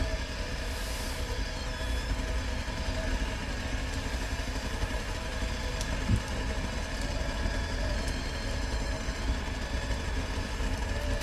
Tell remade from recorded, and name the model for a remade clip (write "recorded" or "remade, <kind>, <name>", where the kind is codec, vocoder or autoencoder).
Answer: recorded